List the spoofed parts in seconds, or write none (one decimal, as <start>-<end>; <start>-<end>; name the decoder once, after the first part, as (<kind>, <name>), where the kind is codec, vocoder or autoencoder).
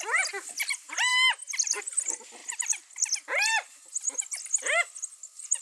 none